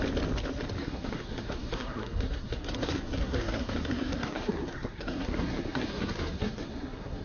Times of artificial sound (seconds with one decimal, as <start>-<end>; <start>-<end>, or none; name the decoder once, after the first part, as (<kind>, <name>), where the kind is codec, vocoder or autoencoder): 0.8-7.2 (codec, SNAC)